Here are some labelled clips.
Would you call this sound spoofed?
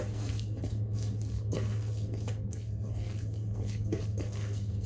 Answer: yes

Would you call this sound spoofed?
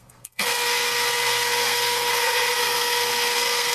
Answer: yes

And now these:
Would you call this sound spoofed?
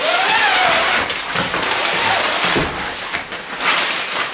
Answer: no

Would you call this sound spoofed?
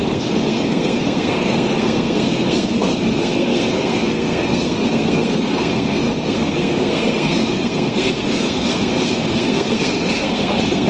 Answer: yes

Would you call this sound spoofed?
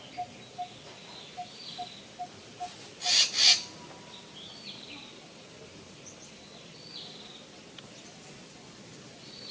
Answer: no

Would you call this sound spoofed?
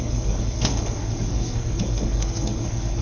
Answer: yes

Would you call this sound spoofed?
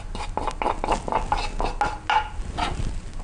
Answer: no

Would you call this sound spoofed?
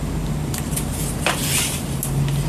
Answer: no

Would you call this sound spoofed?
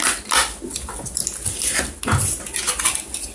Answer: no